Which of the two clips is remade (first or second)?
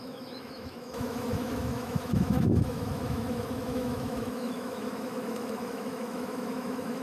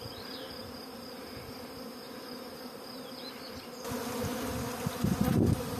first